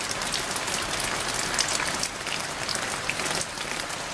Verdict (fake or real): real